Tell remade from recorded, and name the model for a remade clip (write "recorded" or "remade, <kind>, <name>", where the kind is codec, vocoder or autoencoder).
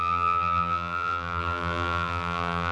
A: remade, vocoder, BigVGAN v2